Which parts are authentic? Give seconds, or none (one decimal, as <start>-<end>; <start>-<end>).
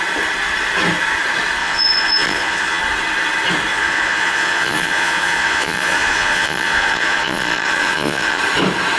0.0-1.6; 2.8-3.7; 8.4-9.0